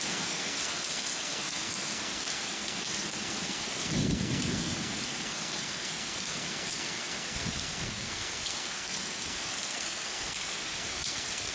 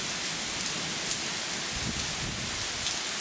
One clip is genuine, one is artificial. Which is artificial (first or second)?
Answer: first